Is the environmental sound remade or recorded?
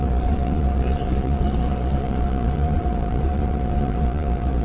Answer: remade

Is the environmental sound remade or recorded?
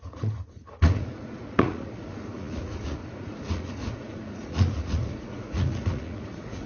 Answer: remade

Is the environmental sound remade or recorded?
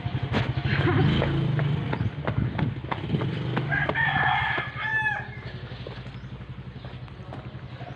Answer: recorded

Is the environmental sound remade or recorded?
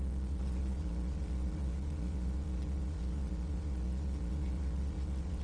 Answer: remade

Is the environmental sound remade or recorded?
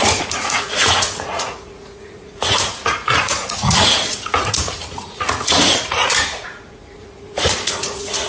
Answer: remade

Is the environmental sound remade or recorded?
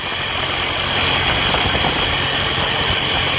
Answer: recorded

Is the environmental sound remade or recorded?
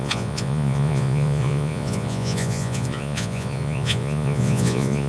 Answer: remade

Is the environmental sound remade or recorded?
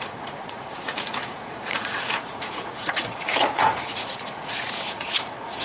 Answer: remade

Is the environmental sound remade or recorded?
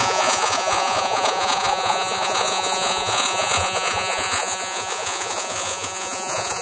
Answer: remade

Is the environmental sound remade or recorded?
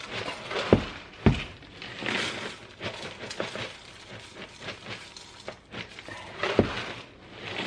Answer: recorded